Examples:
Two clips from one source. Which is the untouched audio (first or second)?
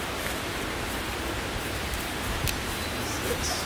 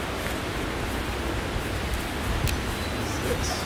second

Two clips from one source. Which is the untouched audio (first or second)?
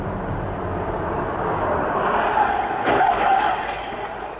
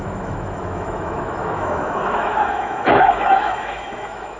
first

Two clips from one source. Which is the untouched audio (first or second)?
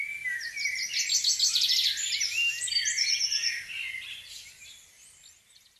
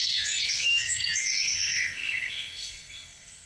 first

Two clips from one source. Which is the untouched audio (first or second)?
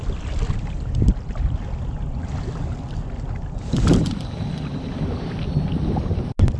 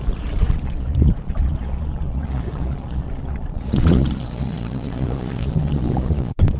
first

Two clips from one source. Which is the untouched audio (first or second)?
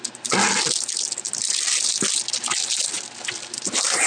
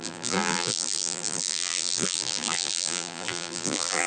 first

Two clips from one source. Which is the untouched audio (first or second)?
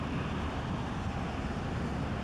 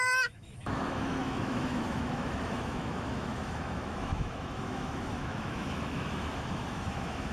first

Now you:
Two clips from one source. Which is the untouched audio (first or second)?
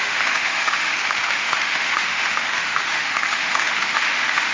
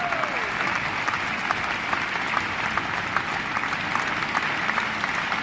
second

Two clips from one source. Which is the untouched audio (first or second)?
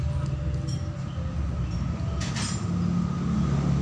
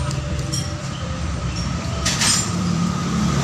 first